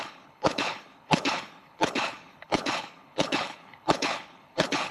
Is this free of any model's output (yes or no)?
no